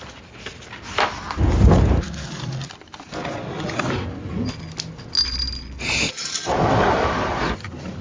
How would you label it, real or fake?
real